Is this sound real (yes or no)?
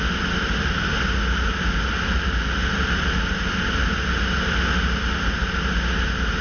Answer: yes